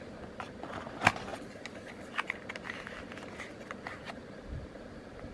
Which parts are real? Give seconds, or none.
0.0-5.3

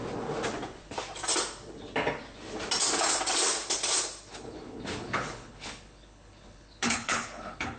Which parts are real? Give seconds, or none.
0.0-4.3

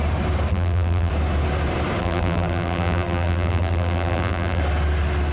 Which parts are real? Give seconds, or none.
0.0-0.5; 1.1-2.0; 4.6-5.3

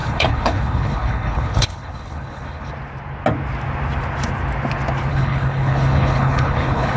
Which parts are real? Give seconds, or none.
2.7-5.1

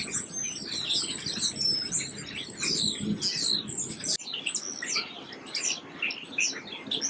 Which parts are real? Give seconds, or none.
0.0-7.1

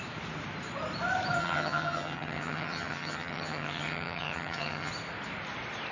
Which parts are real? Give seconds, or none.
0.0-1.4; 4.9-5.9

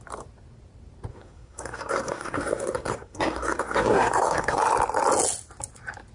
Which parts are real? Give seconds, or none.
0.0-1.1; 4.6-6.1

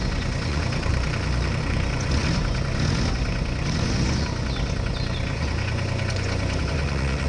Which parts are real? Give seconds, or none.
0.9-1.6